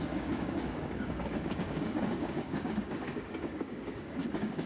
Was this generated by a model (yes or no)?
yes